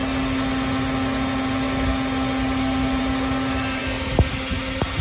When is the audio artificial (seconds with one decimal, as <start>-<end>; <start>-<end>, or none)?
none